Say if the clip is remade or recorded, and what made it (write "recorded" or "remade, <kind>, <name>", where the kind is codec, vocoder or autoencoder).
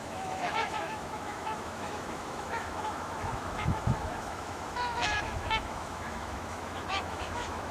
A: remade, autoencoder, DAC-VAE